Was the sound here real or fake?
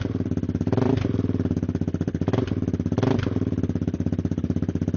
fake